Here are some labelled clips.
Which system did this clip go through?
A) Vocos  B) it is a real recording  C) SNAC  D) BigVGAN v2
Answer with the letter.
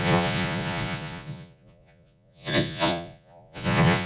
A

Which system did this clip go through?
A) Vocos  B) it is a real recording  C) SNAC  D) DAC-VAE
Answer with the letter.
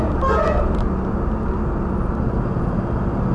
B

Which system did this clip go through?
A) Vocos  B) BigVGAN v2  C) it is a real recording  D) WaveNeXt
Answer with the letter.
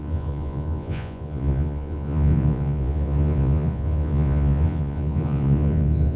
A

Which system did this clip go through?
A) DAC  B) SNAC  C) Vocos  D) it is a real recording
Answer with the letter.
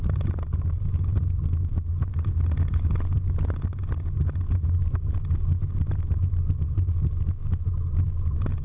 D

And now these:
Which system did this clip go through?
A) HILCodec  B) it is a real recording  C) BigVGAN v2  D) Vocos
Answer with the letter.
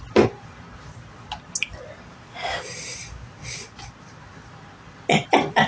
B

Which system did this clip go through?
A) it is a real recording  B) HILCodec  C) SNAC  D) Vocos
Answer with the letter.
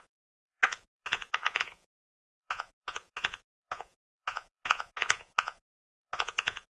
D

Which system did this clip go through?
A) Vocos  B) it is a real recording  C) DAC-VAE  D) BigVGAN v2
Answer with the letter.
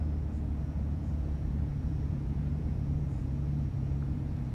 A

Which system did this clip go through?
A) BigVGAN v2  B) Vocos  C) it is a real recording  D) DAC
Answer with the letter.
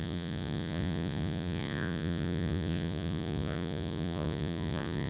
B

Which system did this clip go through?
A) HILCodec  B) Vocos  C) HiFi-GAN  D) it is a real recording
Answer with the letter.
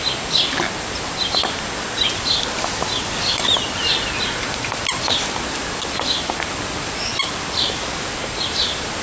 D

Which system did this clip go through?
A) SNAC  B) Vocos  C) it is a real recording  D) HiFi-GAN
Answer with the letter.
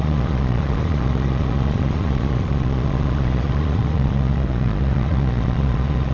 B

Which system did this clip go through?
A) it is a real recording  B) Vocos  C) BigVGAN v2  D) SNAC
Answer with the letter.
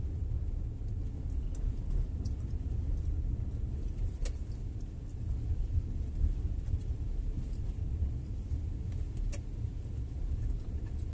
A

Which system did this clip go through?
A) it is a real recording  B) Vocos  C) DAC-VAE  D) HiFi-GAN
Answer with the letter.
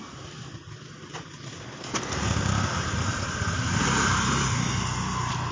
A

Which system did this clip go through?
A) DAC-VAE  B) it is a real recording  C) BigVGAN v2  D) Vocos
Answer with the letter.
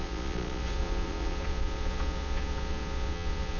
D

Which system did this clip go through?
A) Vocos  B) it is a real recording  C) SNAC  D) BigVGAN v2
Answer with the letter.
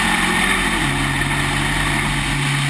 B